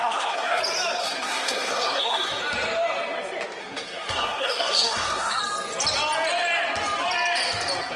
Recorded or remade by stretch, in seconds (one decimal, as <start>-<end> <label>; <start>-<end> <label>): 0.0-0.6 remade; 0.6-1.0 recorded; 1.0-2.4 remade; 2.4-3.6 recorded; 3.6-5.4 remade; 5.4-8.0 recorded